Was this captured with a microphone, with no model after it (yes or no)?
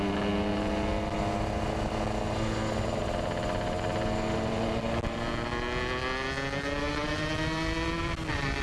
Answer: yes